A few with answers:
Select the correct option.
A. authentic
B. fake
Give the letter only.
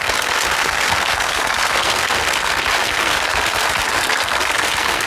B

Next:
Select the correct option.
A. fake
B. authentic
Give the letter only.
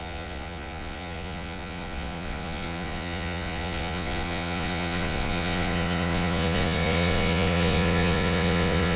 A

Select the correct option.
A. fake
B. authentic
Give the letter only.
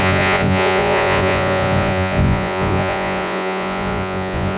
A